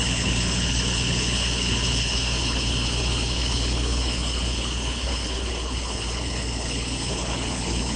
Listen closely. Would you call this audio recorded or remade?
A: remade